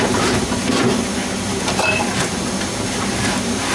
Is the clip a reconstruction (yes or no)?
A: yes